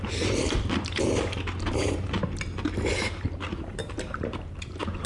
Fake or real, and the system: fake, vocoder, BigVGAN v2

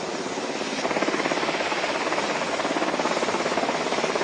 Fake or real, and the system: fake, vocoder, BigVGAN v2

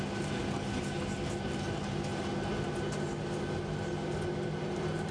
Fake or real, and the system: real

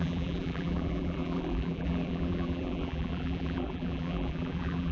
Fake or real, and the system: fake, vocoder, BigVGAN v2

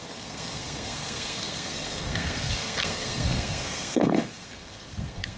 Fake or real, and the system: fake, codec, SNAC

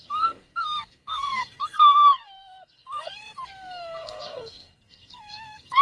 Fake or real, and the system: fake, codec, SNAC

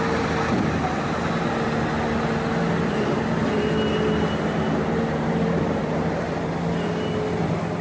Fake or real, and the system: real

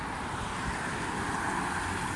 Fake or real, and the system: real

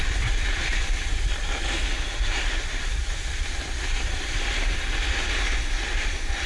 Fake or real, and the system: real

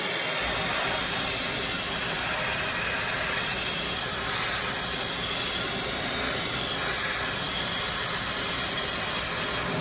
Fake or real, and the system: real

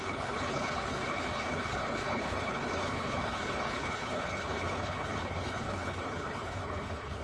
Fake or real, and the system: fake, codec, HILCodec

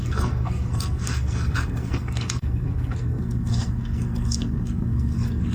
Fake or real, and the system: fake, codec, SNAC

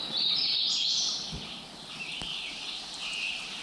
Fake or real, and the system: real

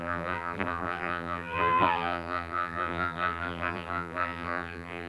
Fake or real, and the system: fake, vocoder, BigVGAN v2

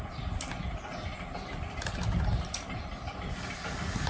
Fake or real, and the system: real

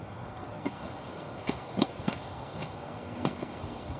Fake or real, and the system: fake, codec, SNAC